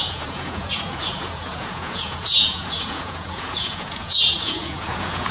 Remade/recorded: remade